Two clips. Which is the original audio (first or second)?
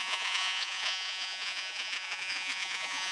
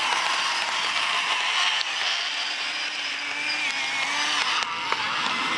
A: second